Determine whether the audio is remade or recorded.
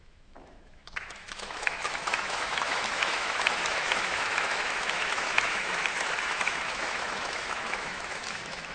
remade